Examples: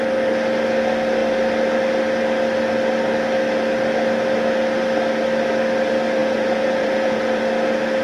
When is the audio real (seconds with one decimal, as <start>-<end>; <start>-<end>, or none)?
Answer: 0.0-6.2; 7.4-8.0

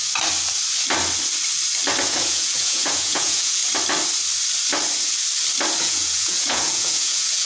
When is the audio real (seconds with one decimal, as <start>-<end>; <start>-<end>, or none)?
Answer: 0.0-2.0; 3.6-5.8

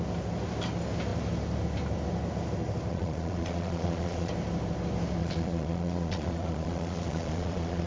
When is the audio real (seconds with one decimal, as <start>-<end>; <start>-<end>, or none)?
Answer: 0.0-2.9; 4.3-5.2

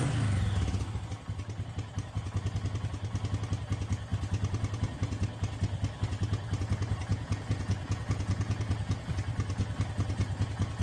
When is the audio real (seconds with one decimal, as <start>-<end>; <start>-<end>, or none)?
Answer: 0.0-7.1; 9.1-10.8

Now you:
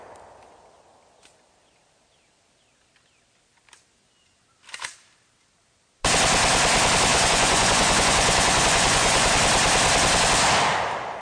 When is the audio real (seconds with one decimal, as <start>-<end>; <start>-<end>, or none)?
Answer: 0.0-7.1; 9.3-11.2